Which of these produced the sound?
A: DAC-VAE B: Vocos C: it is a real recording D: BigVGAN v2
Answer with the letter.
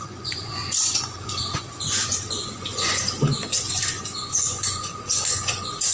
B